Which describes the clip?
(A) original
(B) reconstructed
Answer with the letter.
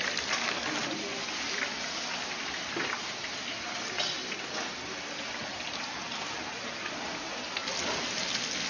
A